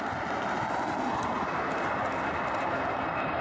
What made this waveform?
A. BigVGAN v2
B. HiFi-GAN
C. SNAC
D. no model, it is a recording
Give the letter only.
D